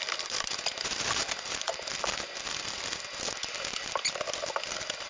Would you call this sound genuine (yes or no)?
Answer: yes